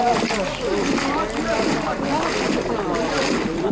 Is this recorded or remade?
recorded